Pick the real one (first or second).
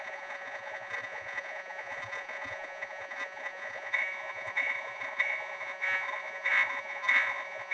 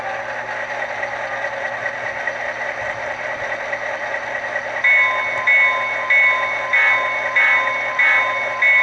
second